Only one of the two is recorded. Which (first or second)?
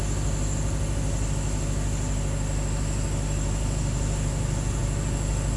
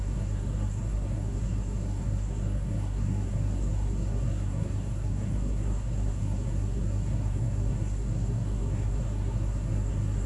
first